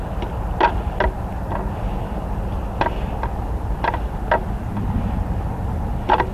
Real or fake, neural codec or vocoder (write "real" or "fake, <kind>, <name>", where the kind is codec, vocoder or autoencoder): real